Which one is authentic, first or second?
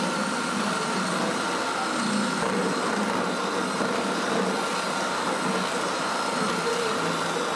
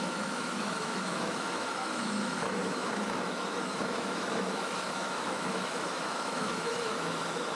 first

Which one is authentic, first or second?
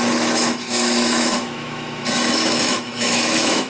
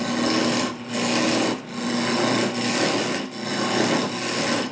second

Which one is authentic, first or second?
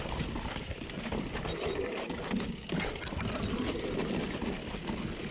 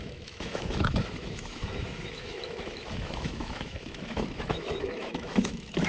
first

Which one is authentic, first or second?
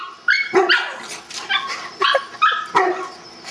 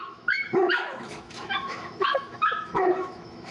first